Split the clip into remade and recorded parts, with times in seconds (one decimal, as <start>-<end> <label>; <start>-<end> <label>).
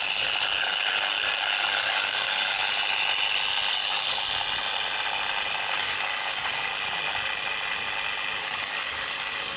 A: 0.0-2.6 remade; 2.6-3.7 recorded; 3.7-4.2 remade; 4.2-5.7 recorded; 5.7-6.7 remade; 6.7-8.4 recorded; 8.4-9.6 remade